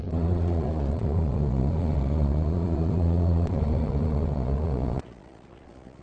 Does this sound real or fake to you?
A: fake